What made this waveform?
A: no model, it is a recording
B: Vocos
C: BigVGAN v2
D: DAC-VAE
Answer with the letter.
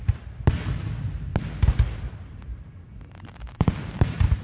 A